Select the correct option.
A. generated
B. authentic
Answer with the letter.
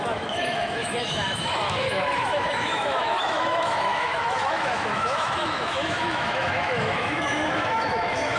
A